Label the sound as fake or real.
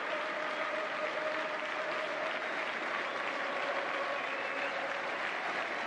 real